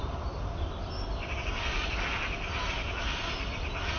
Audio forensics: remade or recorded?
recorded